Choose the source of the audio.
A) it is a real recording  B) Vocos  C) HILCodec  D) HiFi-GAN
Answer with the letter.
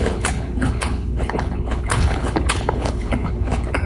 C